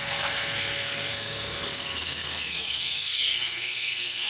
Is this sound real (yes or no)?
no